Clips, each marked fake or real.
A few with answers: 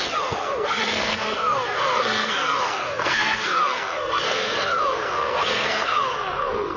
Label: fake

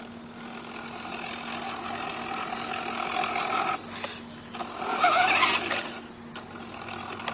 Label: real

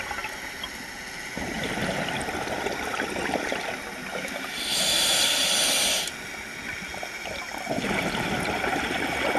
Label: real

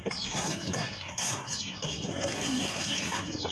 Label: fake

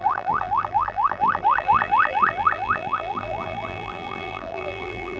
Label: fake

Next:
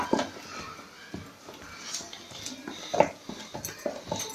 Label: real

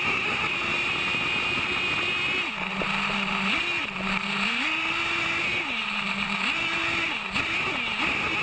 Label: real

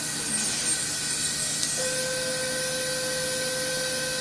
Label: real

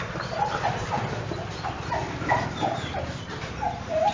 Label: real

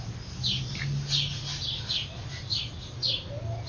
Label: real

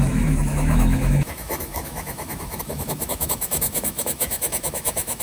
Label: fake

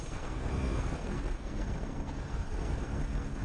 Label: fake